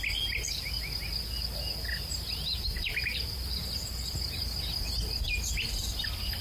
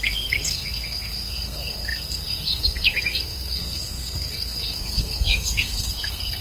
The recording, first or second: first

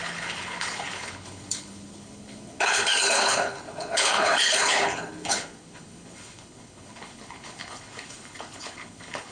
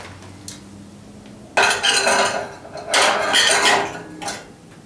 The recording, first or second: second